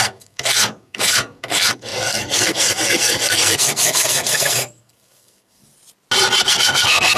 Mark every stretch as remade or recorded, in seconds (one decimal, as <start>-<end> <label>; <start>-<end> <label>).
0.0-5.6 remade; 5.6-6.4 recorded; 6.4-7.2 remade